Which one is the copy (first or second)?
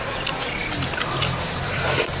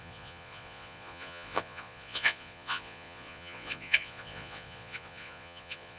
second